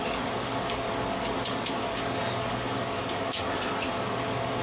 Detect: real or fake fake